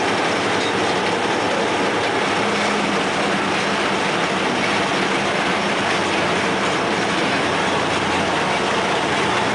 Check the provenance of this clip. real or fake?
real